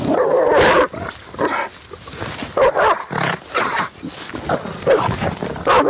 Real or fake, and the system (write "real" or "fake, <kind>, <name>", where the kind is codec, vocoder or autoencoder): real